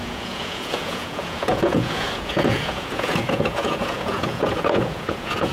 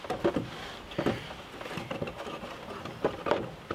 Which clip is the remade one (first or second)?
first